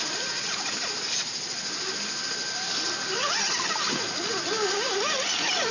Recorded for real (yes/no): yes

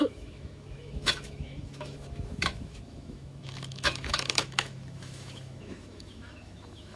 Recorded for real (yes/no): no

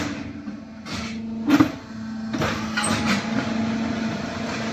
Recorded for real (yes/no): yes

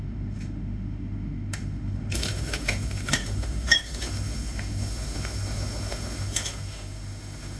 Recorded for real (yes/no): no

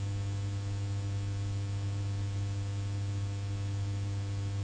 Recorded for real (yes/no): yes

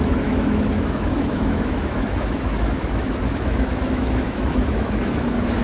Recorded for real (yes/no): no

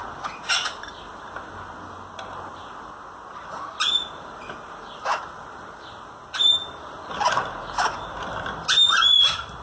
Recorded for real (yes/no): yes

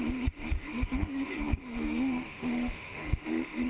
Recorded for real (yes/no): no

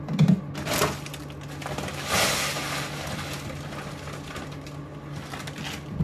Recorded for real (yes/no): yes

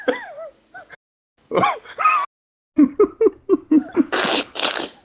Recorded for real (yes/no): yes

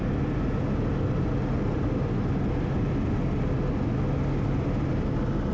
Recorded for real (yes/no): yes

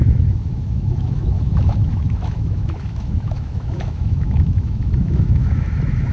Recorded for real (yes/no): no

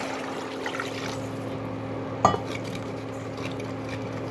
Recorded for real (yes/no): yes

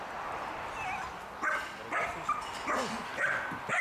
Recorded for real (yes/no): yes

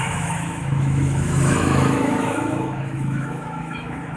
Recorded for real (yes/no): no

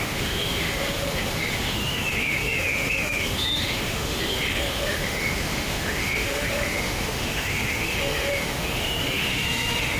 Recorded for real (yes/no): no